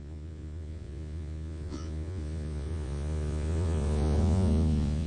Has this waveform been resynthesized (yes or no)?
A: yes